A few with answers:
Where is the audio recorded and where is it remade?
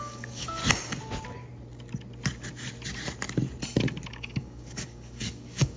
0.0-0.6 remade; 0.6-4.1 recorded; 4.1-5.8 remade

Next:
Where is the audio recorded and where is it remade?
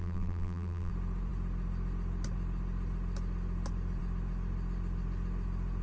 0.0-0.9 remade; 0.9-5.8 recorded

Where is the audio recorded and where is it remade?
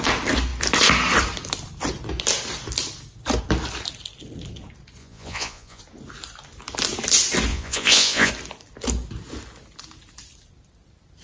0.0-5.0 recorded; 5.0-5.8 remade; 5.8-7.5 recorded; 7.5-8.3 remade; 8.3-11.2 recorded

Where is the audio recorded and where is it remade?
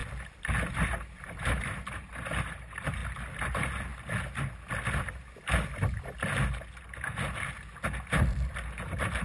0.0-0.6 recorded; 0.6-3.0 remade; 3.0-3.5 recorded; 3.5-3.9 remade; 3.9-9.2 recorded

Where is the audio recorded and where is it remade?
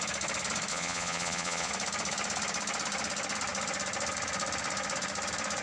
0.0-0.7 recorded; 0.7-1.7 remade; 1.7-5.6 recorded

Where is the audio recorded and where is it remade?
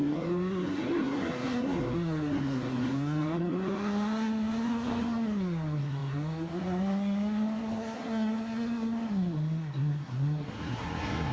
0.0-11.3 remade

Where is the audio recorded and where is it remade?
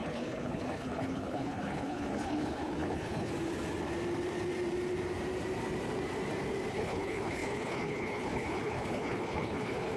0.0-3.3 remade; 3.3-6.7 recorded; 6.7-10.0 remade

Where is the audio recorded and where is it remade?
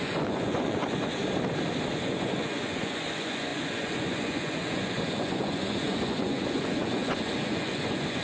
0.0-1.2 remade; 1.2-1.9 recorded; 1.9-8.2 remade